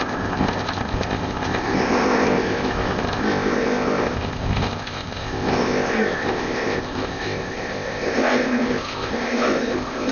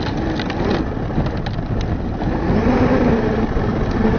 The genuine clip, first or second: second